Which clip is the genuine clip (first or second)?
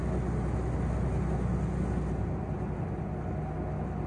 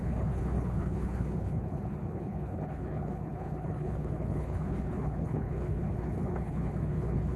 first